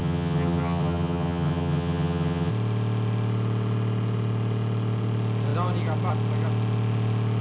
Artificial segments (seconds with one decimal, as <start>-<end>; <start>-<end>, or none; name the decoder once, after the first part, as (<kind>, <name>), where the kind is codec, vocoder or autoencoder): 0.0-2.5 (vocoder, HiFi-GAN)